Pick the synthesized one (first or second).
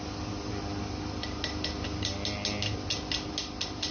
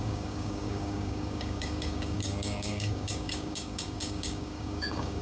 second